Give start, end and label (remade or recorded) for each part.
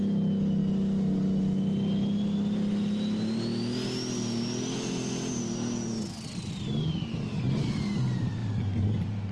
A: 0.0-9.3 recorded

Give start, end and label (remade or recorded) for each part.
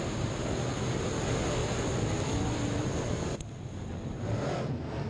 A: 0.0-5.1 recorded